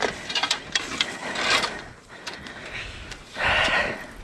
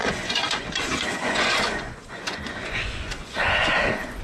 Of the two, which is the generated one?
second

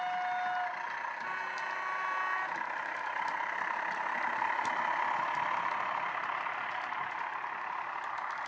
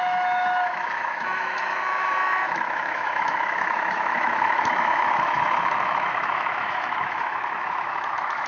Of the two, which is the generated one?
second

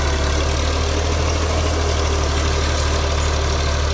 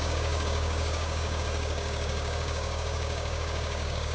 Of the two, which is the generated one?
second